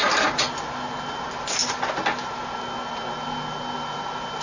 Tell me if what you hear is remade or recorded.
recorded